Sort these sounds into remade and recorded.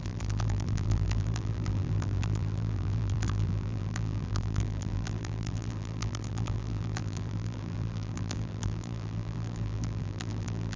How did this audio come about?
remade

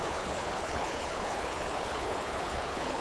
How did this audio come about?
remade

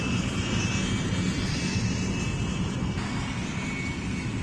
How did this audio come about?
recorded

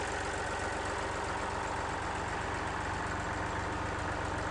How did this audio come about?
recorded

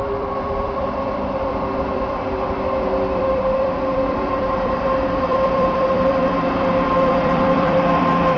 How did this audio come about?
remade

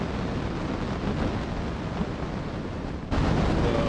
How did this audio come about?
recorded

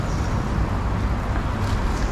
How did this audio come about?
recorded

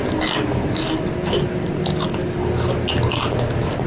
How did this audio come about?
recorded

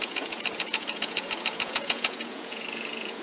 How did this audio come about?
remade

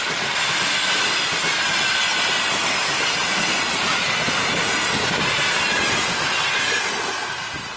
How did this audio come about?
recorded